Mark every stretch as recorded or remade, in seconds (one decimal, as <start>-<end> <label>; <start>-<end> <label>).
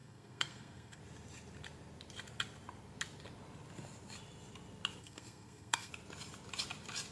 0.0-1.0 remade; 1.0-5.0 recorded; 5.0-5.9 remade; 5.9-7.1 recorded